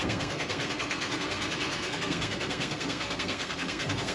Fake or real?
fake